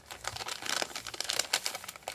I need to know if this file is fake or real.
real